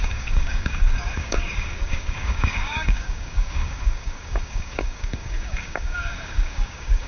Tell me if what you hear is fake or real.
fake